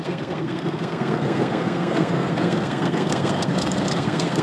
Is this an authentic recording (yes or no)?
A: no